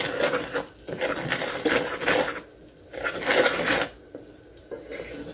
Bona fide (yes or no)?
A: yes